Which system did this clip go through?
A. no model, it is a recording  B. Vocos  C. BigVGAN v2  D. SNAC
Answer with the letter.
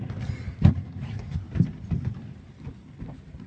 A